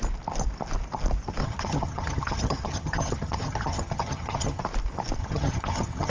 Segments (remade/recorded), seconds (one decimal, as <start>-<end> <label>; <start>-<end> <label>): 0.0-1.4 recorded; 1.4-4.6 remade; 4.6-5.2 recorded; 5.2-6.1 remade